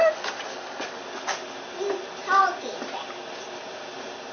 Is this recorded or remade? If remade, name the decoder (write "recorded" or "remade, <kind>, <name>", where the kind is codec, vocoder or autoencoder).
recorded